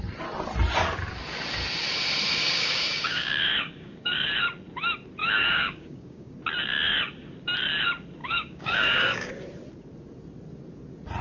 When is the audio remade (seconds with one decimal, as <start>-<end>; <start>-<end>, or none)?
2.4-4.3; 5.2-6.3; 8.2-9.3